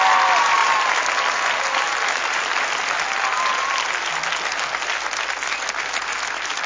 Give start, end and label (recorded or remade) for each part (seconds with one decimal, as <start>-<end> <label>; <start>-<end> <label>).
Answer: 0.0-6.7 recorded